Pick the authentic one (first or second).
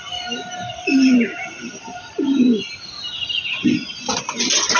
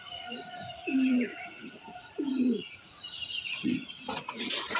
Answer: first